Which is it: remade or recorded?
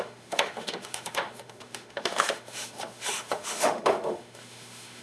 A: remade